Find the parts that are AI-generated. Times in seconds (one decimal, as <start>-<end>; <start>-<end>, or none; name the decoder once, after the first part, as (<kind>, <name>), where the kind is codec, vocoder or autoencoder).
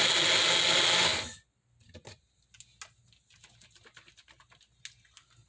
none